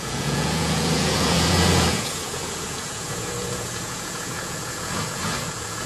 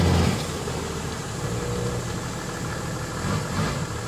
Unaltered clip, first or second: second